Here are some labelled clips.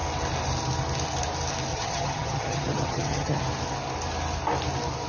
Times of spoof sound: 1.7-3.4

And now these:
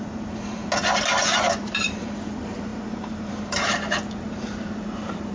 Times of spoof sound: 0.0-0.6; 1.1-5.3

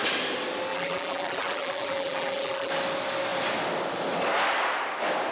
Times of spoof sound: 0.7-2.7

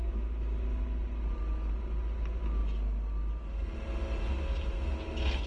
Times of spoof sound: none

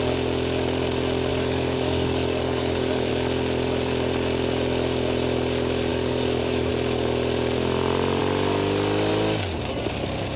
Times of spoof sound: 1.3-3.1; 5.9-6.7

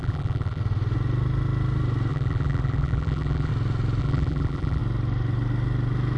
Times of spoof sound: 0.0-0.6; 2.1-3.5; 4.0-4.8